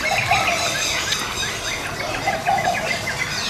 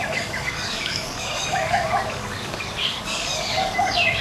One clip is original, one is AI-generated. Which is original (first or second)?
first